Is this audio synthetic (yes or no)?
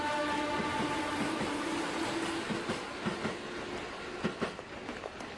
no